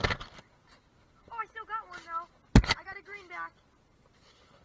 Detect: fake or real real